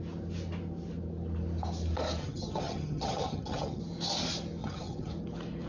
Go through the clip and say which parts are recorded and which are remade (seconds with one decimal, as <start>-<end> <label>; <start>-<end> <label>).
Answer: 0.0-2.2 recorded; 2.2-3.8 remade; 3.8-4.6 recorded; 4.6-5.1 remade; 5.1-5.7 recorded